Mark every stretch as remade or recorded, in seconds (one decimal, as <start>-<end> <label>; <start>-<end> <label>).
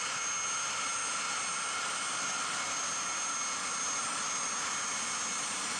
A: 0.0-5.8 recorded